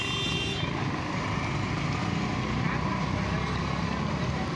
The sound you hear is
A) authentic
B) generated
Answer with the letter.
A